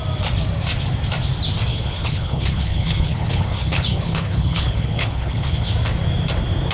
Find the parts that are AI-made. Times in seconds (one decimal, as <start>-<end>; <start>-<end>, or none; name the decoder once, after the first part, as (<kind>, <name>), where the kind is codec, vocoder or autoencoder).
1.7-5.7 (codec, HILCodec)